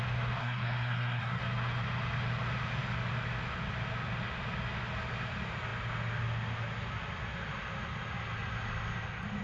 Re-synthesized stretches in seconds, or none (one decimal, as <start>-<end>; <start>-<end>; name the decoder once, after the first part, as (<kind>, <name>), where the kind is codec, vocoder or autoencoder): 0.4-1.4 (codec, SNAC)